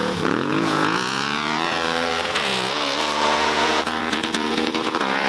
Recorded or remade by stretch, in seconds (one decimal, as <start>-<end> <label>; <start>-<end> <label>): 0.0-5.3 remade